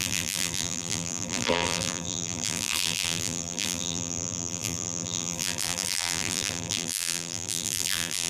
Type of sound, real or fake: fake